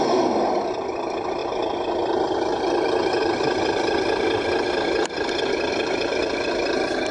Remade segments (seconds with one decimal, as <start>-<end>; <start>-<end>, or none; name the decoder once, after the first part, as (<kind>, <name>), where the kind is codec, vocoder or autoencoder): none